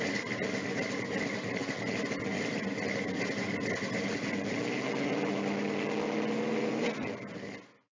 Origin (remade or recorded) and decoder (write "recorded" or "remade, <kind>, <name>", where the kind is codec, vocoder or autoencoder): recorded